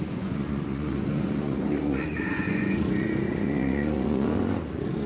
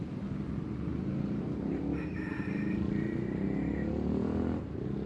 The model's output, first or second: first